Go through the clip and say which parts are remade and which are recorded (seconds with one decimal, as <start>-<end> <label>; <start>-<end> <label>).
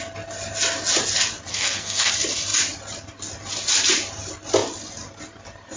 0.0-1.5 recorded; 1.5-2.1 remade; 2.1-5.8 recorded